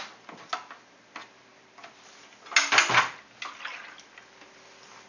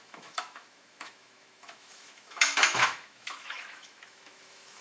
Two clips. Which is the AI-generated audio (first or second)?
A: second